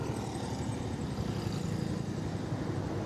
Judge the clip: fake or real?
real